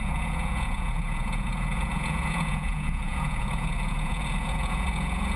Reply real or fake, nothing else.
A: fake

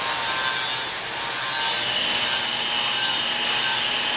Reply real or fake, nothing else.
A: real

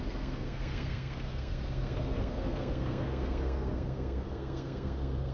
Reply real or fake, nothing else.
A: fake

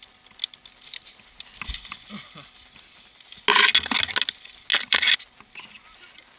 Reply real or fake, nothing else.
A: real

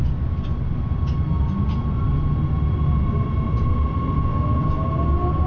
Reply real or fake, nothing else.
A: real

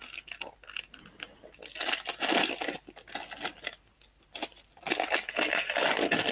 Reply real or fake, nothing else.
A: real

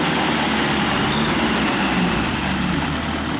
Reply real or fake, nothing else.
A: real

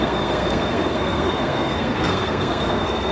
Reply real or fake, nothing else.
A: fake